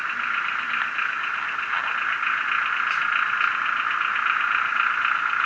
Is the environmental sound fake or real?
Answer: real